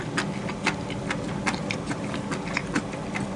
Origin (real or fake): real